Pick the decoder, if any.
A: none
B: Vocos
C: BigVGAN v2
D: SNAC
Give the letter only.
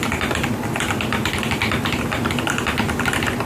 C